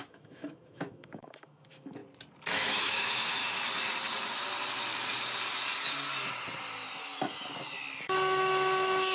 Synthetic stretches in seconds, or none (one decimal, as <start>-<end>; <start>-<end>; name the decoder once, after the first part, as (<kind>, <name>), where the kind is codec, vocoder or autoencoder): 0.0-2.0 (autoencoder, DAC-VAE); 2.5-3.4; 8.0-9.1